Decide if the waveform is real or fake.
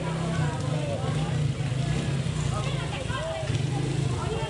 real